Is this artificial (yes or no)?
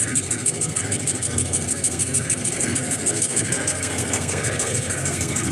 yes